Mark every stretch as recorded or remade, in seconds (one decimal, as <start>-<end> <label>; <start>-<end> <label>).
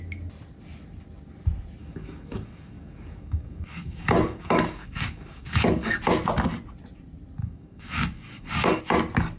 0.0-1.8 recorded; 1.8-6.0 remade; 6.0-7.4 recorded; 7.4-8.8 remade; 8.8-9.4 recorded